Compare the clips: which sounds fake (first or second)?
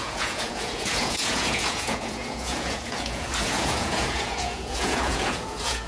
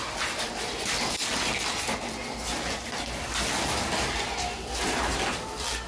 first